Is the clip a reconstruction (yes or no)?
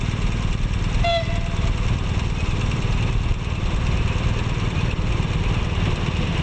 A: no